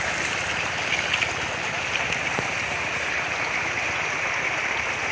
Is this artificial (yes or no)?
no